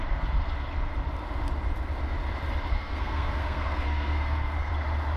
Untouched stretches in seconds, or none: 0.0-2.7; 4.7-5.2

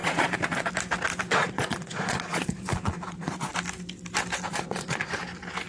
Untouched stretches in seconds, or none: 0.7-1.4; 3.5-4.5; 5.1-5.7

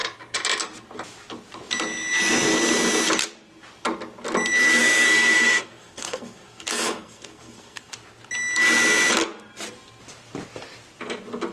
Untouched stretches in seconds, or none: 0.0-4.8; 7.9-11.5